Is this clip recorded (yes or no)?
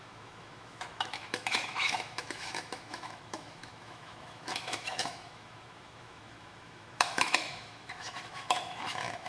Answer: no